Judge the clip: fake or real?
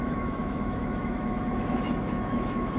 fake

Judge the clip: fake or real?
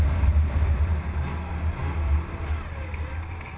real